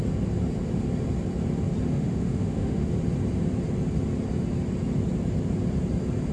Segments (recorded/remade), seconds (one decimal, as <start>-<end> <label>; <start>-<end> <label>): 0.0-1.9 recorded; 1.9-2.9 remade; 2.9-6.3 recorded